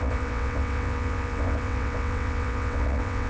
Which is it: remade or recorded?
remade